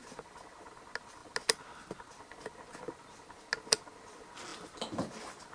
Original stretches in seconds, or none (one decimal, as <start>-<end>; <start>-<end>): 0.0-5.5